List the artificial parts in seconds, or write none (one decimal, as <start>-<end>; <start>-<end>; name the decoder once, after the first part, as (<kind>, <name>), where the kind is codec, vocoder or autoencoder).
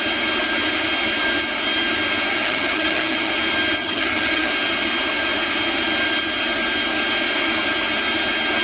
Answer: 2.3-3.3 (vocoder, HiFi-GAN); 3.8-4.5